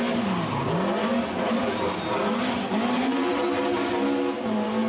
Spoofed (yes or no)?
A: no